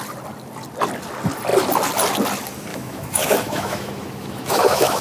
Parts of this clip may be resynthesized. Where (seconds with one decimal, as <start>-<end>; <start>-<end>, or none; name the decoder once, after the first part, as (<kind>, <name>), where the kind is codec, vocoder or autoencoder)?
2.7-5.0 (autoencoder, DAC-VAE)